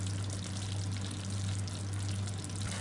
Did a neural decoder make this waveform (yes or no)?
no